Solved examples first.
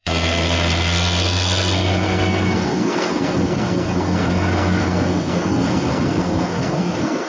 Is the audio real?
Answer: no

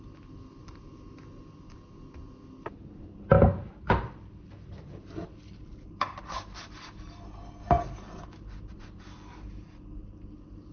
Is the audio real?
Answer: yes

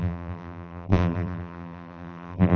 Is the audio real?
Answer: no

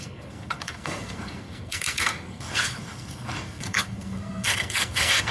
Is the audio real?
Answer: no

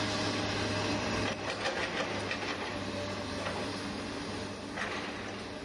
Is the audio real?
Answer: yes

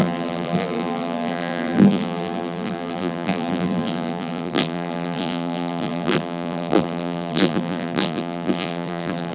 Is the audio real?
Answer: no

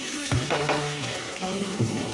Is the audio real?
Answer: no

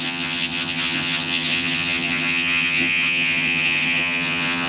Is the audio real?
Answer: no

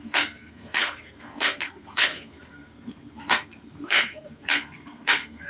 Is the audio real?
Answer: no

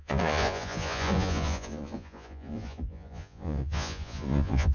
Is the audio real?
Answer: no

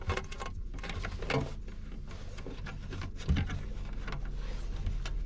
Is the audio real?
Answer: yes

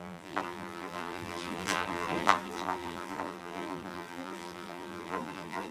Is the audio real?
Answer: no